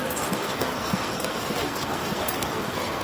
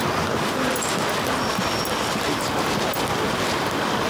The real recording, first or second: second